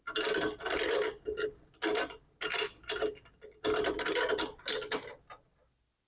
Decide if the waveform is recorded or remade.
recorded